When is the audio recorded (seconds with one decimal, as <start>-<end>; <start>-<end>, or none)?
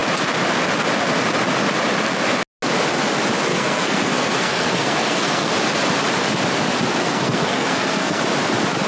0.0-3.5; 5.5-7.0; 8.2-8.9